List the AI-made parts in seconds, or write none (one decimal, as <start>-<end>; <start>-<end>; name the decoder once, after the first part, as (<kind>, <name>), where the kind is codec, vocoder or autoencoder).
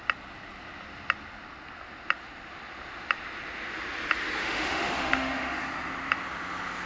4.4-5.6 (autoencoder, DAC-VAE)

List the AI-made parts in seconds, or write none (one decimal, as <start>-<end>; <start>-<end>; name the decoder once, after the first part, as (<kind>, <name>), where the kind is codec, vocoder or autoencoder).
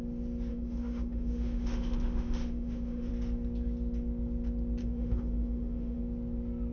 0.5-3.1 (autoencoder, DAC-VAE); 4.8-6.0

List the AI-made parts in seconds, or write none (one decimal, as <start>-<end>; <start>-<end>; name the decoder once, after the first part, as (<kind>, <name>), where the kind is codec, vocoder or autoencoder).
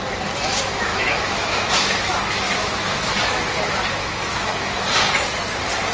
0.9-3.4 (autoencoder, DAC-VAE); 4.0-4.7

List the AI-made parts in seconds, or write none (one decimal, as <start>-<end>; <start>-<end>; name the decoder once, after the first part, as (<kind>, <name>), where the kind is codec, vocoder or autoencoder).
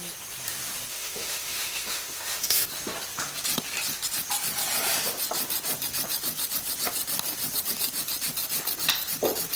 0.9-2.7 (autoencoder, DAC-VAE)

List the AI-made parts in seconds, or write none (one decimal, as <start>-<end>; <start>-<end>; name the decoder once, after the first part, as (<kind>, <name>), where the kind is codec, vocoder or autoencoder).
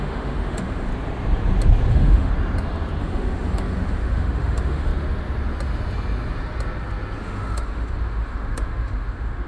0.0-0.9 (autoencoder, DAC-VAE); 1.9-2.3; 3.0-4.9; 7.2-9.5